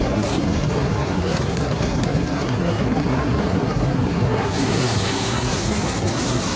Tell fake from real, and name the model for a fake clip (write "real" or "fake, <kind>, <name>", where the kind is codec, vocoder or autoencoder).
fake, codec, SNAC